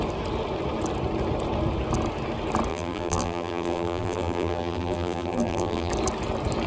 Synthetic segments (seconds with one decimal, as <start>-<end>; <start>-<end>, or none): 2.7-5.9

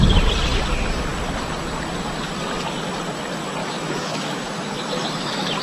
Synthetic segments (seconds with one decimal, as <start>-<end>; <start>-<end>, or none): 3.6-4.9

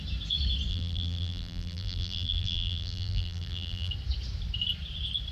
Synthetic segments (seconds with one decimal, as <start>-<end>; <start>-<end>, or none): 0.7-3.9

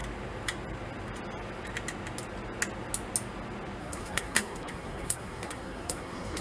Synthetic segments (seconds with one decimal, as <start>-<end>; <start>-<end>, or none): 3.8-6.4

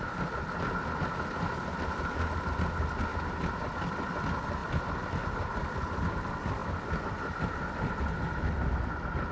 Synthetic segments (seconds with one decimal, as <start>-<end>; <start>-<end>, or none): none